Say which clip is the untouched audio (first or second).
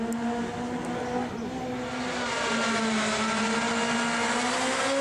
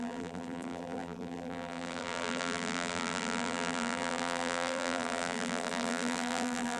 first